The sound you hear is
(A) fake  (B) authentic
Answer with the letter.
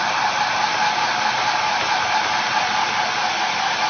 B